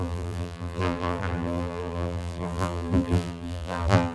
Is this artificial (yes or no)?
yes